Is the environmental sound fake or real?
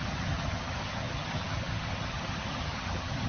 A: fake